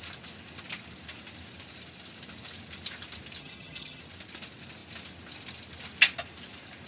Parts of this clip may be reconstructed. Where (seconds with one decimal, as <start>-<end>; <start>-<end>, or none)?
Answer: 3.4-4.0

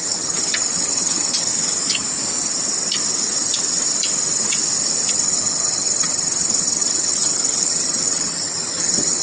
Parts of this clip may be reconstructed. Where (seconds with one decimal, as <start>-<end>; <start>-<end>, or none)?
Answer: 0.0-1.5; 5.1-9.2

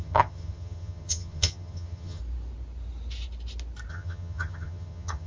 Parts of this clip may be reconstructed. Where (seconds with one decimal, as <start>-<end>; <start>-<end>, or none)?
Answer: 0.0-2.2; 3.9-5.3

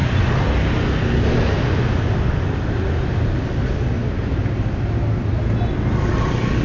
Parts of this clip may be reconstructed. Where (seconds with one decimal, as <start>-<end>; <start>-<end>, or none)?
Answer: none

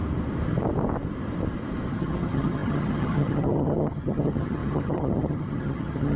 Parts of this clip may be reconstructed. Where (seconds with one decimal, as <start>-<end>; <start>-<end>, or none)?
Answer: 1.9-6.2

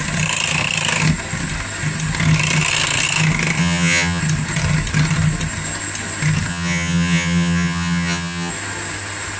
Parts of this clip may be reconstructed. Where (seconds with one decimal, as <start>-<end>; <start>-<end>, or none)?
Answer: 3.6-4.2; 6.5-8.5

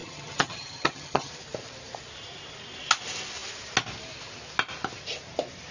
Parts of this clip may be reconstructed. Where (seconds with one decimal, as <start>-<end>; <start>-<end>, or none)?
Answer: 0.0-1.3